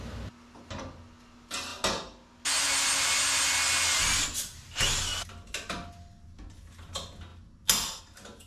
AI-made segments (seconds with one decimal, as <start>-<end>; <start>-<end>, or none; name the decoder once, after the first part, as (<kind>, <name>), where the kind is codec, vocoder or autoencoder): none